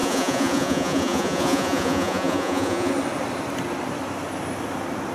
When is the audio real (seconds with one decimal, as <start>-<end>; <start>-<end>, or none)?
2.9-5.1